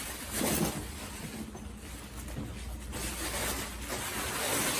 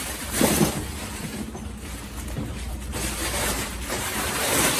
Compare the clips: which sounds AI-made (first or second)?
second